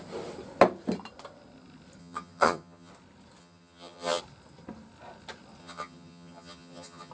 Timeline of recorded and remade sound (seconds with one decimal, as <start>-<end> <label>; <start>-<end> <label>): 0.0-2.0 recorded; 2.0-2.9 remade; 2.9-3.4 recorded; 3.4-4.2 remade; 4.2-5.6 recorded; 5.6-7.1 remade